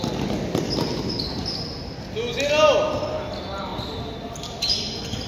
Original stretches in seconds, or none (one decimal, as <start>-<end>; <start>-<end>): 0.0-5.3